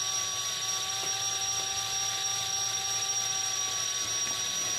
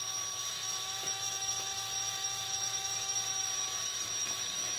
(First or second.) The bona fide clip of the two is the first